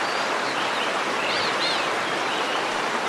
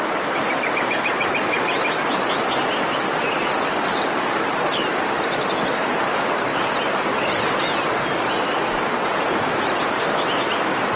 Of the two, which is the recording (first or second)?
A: second